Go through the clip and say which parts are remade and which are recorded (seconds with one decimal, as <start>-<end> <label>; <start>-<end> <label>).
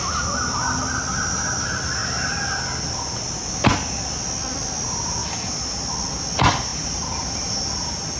0.0-6.7 recorded; 6.7-7.5 remade; 7.5-8.2 recorded